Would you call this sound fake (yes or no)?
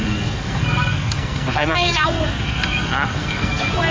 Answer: yes